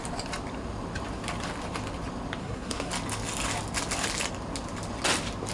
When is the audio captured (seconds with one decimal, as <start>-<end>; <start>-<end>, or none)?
0.0-2.4; 2.9-5.5